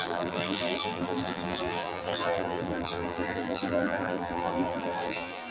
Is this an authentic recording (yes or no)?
no